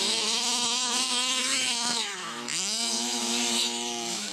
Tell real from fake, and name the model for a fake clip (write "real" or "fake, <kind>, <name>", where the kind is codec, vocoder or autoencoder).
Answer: fake, autoencoder, DAC-VAE